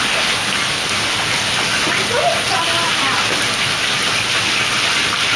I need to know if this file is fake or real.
real